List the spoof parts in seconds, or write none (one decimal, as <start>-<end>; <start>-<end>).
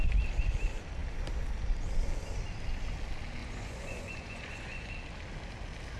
3.4-4.9